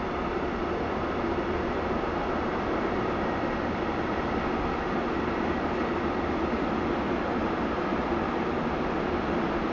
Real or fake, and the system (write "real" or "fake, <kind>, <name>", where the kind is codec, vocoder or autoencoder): real